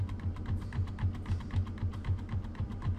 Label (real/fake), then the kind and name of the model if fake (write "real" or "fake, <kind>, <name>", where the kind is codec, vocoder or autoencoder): fake, vocoder, BigVGAN v2